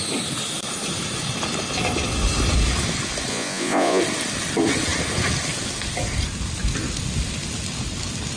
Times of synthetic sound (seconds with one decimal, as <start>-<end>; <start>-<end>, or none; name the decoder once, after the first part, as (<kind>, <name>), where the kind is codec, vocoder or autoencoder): 3.3-4.0 (vocoder, Vocos)